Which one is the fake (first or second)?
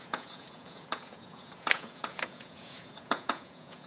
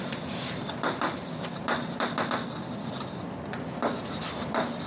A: first